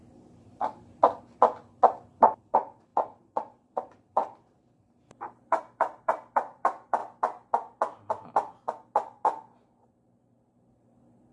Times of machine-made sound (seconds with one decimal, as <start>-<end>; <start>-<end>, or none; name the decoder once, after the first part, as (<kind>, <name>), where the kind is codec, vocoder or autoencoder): 0.0-1.0 (vocoder, BigVGAN v2); 1.9-7.0; 9.8-11.3